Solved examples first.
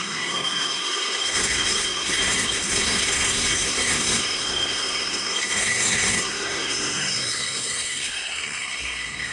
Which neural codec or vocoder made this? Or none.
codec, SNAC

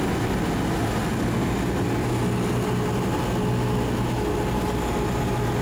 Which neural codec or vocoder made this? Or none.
none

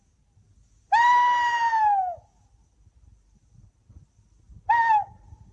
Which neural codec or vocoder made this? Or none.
none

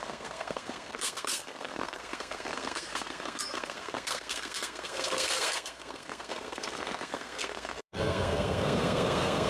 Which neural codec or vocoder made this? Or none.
codec, SNAC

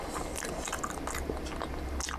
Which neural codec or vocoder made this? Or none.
none